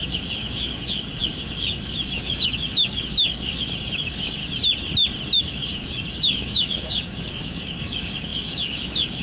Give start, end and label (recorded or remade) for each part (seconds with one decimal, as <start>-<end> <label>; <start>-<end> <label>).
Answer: 0.0-4.4 remade; 4.4-5.4 recorded; 5.4-9.2 remade